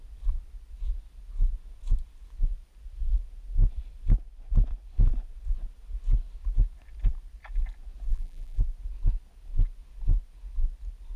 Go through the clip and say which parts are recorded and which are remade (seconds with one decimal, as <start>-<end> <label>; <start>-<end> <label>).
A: 0.0-8.1 recorded; 8.1-8.6 remade; 8.6-11.2 recorded